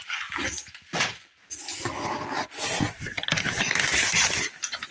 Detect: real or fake real